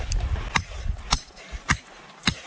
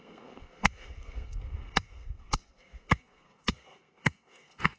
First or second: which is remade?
second